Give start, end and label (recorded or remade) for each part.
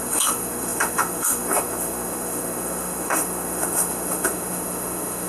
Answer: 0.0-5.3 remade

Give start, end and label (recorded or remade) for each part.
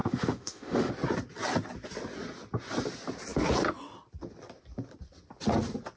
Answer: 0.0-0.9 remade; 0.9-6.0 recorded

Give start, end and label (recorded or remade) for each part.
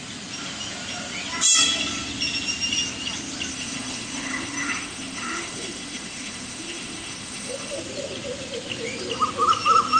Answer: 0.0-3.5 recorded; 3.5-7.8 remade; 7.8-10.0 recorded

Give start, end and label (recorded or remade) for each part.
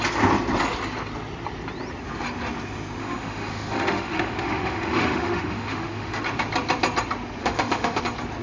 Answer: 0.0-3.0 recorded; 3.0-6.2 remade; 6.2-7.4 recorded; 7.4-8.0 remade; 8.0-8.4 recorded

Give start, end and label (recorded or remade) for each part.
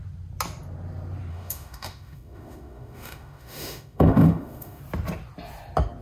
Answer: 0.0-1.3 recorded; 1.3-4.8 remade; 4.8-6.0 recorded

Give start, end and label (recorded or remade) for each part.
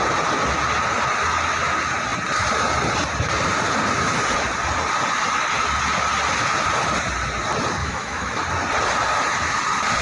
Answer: 0.0-7.8 recorded; 7.8-8.4 remade; 8.4-10.0 recorded